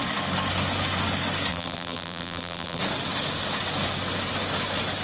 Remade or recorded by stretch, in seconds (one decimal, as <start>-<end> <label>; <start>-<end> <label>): 0.0-1.5 recorded; 1.5-2.8 remade; 2.8-5.0 recorded